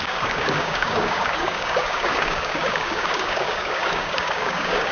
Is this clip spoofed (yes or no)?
yes